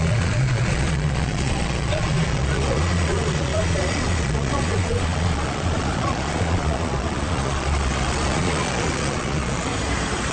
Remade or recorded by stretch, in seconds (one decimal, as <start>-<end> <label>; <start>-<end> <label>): 0.0-9.7 remade; 9.7-10.3 recorded